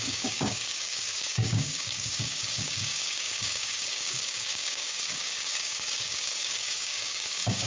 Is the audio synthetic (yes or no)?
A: yes